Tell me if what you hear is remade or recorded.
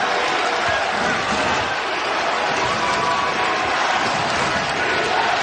recorded